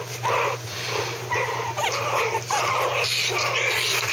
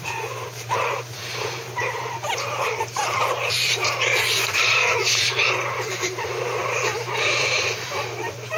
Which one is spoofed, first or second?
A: second